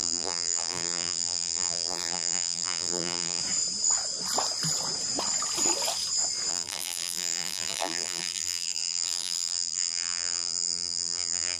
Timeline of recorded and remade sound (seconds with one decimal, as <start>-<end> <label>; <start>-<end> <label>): 0.0-3.4 remade; 3.4-6.5 recorded; 6.5-11.6 remade